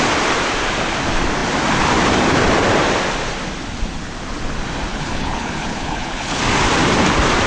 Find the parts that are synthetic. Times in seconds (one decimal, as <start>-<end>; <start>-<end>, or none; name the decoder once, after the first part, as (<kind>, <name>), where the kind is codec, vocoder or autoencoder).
4.9-6.4 (codec, HILCodec)